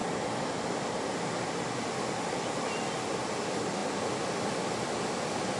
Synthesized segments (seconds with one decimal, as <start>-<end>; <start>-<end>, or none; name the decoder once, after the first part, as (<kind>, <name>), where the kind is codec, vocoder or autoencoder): none

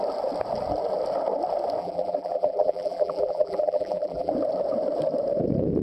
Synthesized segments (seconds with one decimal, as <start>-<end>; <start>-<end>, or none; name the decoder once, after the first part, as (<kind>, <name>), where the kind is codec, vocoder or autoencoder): 1.8-4.3 (vocoder, BigVGAN v2)

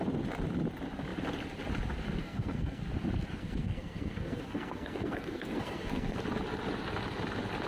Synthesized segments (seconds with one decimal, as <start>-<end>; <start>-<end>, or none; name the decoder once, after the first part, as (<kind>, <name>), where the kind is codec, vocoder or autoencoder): 2.2-2.9 (codec, SNAC); 3.3-6.2

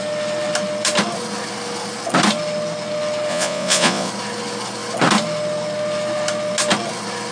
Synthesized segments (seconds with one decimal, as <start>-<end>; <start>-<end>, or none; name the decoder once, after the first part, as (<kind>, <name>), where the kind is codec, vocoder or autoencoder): 3.3-4.1 (vocoder, Vocos)

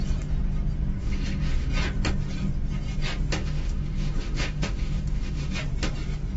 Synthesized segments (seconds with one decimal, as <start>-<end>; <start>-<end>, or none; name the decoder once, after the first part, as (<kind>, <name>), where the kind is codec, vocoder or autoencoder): 1.0-1.7 (autoencoder, DAC-VAE); 3.4-5.6

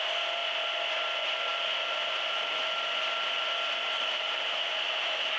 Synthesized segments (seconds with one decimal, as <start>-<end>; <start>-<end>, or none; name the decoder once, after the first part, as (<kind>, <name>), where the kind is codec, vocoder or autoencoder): none

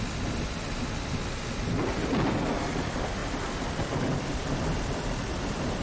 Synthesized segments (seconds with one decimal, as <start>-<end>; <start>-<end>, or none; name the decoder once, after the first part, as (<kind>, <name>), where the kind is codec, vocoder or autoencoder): 3.2-4.6 (vocoder, BigVGAN v2)

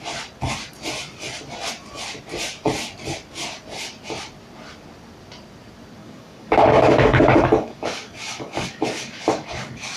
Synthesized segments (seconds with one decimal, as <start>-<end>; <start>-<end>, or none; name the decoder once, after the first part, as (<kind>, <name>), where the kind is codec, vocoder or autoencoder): 6.0-10.0 (codec, DAC)